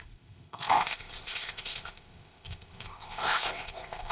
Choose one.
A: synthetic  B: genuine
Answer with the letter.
A